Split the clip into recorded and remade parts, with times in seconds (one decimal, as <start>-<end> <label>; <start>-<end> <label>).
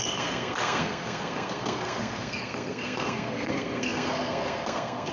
0.0-5.1 remade